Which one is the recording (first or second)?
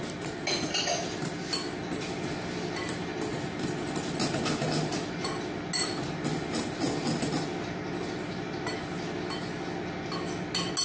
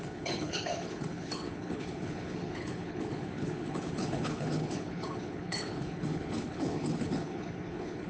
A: first